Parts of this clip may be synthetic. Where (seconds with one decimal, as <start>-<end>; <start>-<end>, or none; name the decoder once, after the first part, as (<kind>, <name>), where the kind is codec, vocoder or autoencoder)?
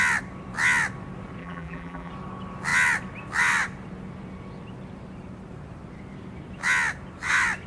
1.4-2.1 (vocoder, BigVGAN v2)